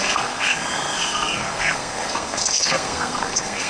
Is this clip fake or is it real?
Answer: fake